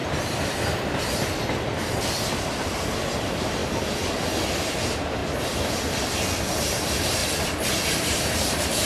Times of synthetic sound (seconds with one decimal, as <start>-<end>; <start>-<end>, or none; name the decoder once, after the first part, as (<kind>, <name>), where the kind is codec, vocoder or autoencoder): 3.2-3.6 (vocoder, BigVGAN v2); 4.6-5.2; 6.5-7.2; 8.0-8.8